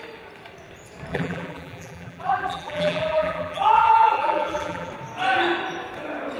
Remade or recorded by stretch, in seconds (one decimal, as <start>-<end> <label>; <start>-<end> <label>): 0.0-1.1 recorded; 1.1-4.9 remade; 4.9-6.4 recorded